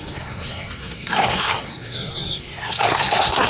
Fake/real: fake